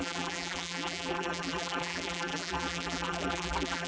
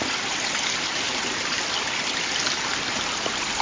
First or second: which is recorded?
second